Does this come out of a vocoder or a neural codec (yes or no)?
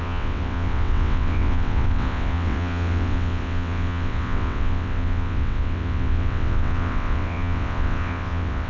yes